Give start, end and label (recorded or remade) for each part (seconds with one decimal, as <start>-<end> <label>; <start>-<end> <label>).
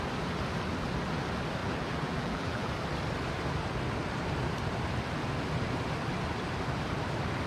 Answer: 0.0-1.6 recorded; 1.6-2.7 remade; 2.7-7.5 recorded